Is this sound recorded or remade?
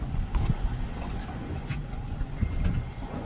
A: remade